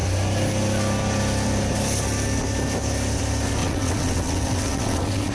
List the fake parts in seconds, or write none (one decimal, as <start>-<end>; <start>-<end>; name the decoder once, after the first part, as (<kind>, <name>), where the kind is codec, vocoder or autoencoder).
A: 3.6-5.3 (vocoder, WaveNeXt)